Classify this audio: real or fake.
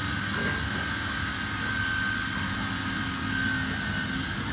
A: real